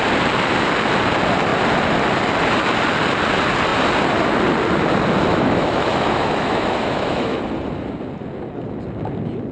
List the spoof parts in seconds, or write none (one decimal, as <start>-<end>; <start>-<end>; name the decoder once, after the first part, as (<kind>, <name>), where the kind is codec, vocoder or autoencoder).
5.3-7.4 (autoencoder, DAC-VAE)